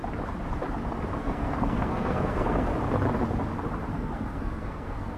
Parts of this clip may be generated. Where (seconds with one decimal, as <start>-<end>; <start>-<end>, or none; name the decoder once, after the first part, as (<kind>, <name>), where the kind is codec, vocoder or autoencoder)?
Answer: 1.2-2.7 (codec, SNAC); 3.9-5.2